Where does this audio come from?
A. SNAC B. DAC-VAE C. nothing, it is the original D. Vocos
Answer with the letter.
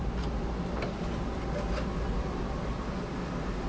C